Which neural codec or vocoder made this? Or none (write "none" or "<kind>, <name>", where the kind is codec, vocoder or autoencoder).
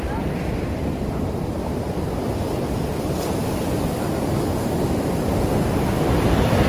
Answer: vocoder, BigVGAN v2